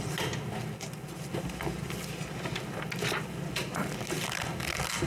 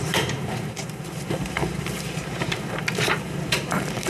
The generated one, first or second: second